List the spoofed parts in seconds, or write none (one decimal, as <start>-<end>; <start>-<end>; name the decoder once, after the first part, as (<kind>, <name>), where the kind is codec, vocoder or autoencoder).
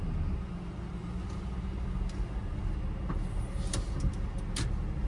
none